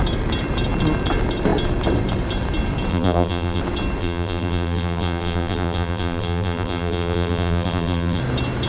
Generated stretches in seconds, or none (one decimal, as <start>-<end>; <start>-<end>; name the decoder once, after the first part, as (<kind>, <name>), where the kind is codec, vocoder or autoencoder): 2.9-3.6 (vocoder, BigVGAN v2); 4.0-8.2